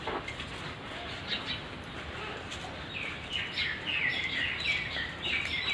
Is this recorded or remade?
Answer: recorded